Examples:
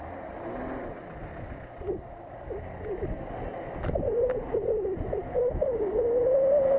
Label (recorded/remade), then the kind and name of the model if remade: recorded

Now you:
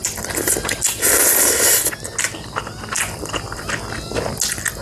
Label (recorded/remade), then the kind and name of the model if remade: recorded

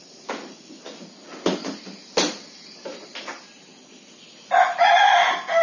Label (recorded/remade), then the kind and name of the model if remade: recorded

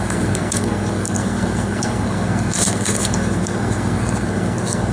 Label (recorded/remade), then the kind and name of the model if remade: remade, codec, SNAC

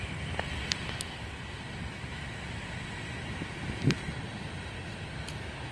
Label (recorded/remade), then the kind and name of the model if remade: recorded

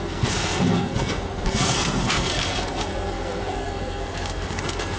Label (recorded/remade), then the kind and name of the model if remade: remade, codec, SNAC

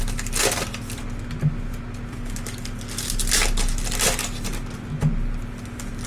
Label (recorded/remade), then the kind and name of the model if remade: recorded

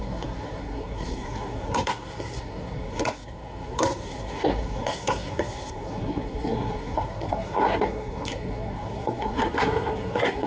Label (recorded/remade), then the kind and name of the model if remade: remade, codec, SNAC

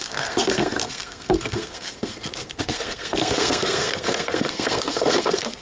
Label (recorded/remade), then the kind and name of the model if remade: remade, codec, SNAC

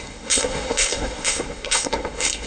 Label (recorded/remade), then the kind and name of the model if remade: remade, codec, SNAC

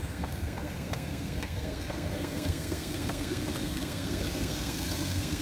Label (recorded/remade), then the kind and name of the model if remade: remade, codec, SNAC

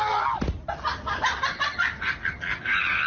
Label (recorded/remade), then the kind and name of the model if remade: recorded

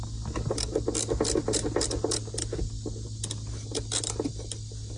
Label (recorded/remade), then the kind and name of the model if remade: recorded